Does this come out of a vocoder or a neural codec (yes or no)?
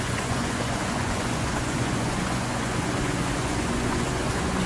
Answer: yes